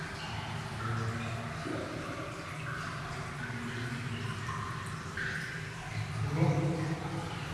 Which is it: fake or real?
real